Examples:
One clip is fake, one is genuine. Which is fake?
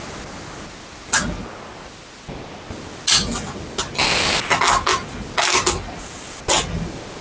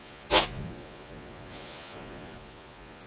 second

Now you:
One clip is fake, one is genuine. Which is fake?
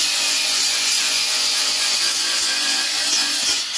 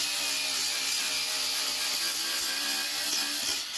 first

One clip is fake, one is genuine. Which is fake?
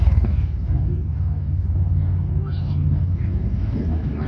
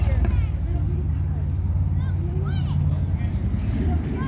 first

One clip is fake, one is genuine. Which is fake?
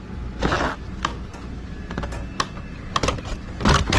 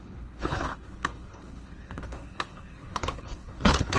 second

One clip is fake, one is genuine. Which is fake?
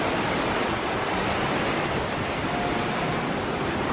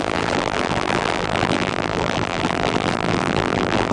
second